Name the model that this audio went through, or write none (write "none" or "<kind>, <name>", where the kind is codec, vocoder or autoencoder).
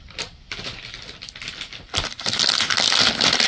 none